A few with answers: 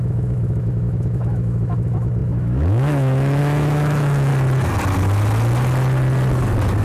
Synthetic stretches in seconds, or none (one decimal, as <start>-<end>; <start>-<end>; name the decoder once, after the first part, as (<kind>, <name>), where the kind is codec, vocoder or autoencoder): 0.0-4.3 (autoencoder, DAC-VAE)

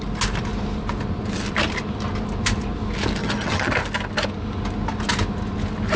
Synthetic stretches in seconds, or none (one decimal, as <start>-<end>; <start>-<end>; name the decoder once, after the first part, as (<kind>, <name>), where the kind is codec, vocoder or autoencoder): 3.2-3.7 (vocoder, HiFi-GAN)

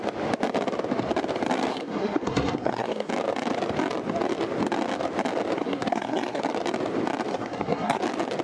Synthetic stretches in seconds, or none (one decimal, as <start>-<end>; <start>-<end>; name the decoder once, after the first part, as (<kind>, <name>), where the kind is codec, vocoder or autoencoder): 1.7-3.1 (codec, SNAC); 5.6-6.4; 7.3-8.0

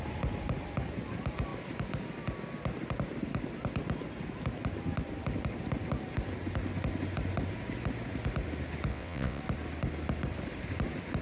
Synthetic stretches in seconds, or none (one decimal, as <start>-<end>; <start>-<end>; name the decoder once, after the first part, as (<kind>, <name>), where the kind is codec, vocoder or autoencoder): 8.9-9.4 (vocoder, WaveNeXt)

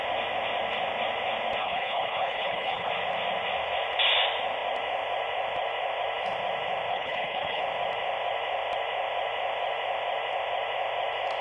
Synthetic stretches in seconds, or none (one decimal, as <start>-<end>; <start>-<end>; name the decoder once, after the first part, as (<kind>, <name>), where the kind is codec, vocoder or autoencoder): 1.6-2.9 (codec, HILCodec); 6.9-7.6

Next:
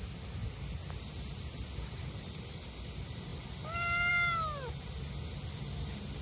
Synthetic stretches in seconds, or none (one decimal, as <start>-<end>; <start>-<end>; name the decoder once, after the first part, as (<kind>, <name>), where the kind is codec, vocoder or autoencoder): none

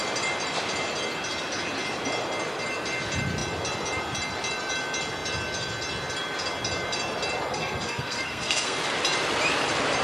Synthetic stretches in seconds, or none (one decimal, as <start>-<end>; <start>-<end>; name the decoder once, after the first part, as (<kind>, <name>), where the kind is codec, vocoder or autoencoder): 7.5-8.8 (codec, SNAC)

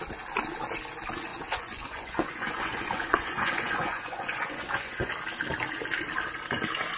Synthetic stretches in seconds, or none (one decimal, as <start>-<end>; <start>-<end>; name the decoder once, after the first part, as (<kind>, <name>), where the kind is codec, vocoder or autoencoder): 1.3-5.1 (vocoder, Vocos)